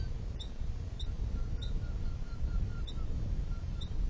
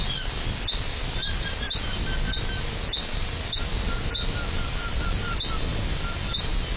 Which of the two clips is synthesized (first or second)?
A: first